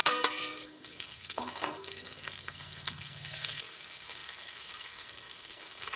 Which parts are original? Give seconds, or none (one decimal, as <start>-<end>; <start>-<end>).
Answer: none